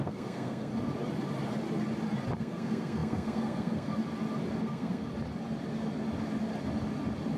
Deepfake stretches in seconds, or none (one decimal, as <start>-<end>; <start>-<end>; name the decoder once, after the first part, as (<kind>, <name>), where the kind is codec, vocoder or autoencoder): 0.0-0.7 (codec, SNAC); 2.4-4.0; 4.6-5.1